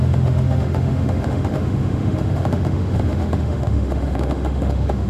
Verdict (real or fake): fake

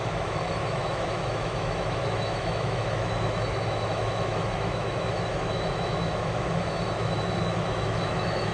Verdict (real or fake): fake